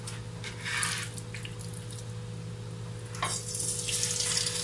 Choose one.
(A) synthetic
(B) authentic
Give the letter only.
B